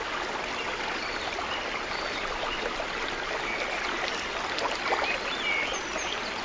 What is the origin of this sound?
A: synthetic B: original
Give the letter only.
B